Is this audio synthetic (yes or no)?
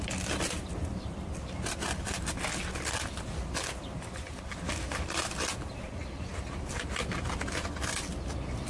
no